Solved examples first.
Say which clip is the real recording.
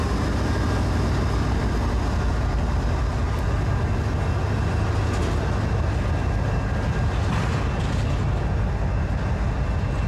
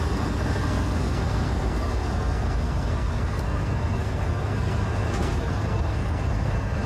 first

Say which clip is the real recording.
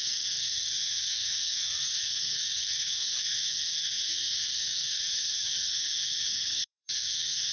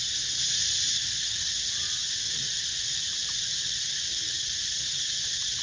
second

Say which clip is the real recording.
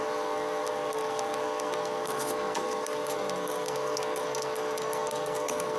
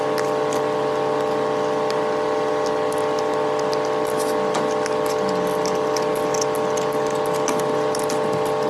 second